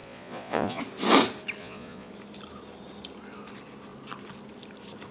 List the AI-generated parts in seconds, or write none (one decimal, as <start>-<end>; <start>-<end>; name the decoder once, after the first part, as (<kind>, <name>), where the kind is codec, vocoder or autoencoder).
0.0-0.8 (vocoder, Vocos); 1.6-2.1